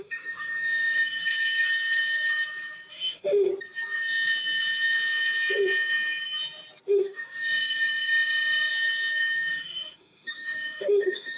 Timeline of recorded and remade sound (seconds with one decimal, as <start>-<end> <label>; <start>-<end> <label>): 0.0-1.2 remade; 1.2-2.9 recorded; 2.9-3.5 remade; 3.5-6.9 recorded; 6.9-8.7 remade; 8.7-9.5 recorded; 9.5-11.4 remade